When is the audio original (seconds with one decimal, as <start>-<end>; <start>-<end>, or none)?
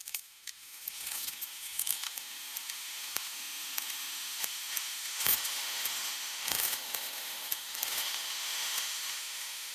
none